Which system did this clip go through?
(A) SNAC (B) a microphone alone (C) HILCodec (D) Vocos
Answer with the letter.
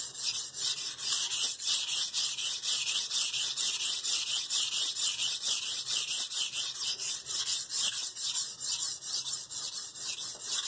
B